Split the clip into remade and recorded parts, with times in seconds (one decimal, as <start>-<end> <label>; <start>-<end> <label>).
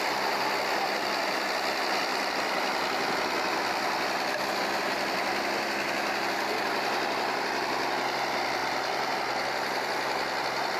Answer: 0.0-2.1 recorded; 2.1-6.3 remade; 6.3-10.8 recorded